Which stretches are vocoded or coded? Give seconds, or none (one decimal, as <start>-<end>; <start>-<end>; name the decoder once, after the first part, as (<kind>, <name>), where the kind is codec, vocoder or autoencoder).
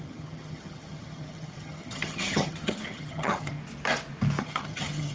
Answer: 0.0-3.6 (vocoder, HiFi-GAN); 4.4-5.1